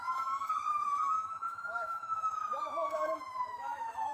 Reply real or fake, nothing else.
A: fake